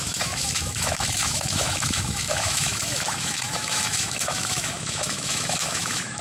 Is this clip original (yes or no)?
no